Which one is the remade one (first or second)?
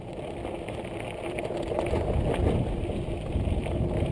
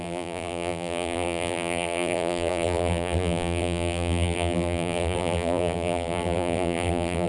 second